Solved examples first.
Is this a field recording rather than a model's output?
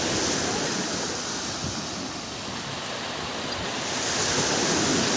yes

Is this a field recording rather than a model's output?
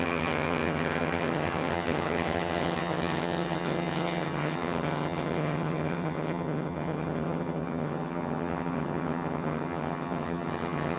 no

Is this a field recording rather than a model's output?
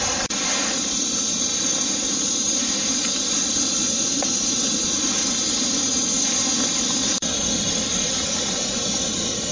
yes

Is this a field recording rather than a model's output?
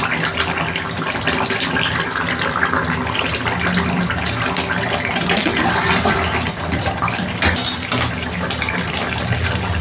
yes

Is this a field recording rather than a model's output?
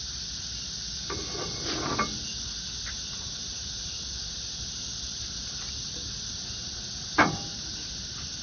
yes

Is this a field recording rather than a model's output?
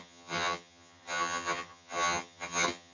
no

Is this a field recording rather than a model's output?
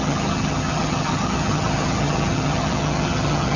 no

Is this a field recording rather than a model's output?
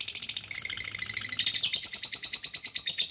yes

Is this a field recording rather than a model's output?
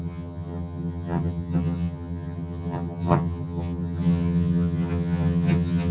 no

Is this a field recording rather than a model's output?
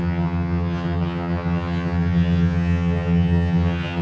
no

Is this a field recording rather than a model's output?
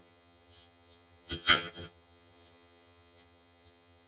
no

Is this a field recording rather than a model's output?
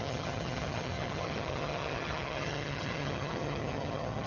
no